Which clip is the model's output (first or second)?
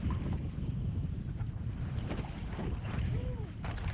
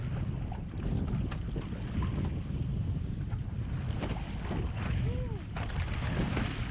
first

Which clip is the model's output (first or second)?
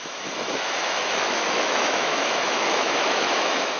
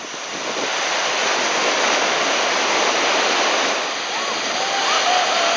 first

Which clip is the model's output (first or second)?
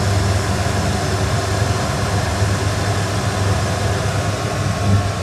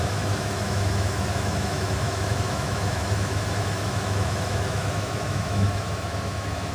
second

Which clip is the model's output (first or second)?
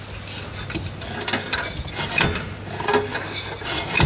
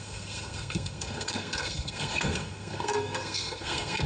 second